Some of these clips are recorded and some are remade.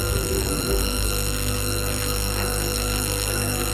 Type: remade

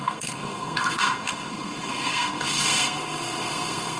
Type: remade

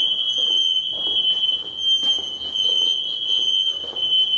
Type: recorded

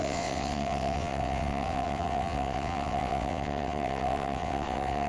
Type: remade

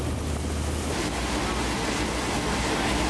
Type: recorded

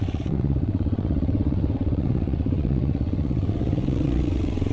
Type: remade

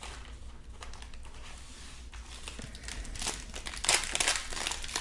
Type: recorded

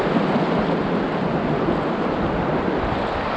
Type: recorded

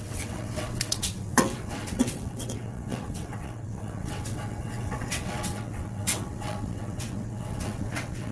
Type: remade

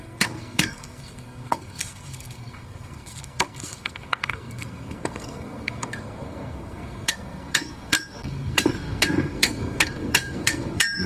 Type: remade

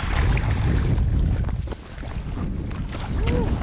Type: recorded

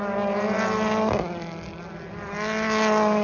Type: recorded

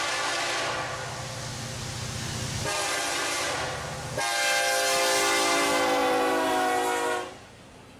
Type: recorded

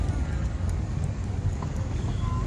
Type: remade